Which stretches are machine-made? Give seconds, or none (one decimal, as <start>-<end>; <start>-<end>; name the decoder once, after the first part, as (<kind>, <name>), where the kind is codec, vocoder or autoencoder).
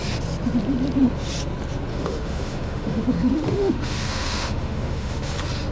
1.9-5.3 (autoencoder, DAC-VAE)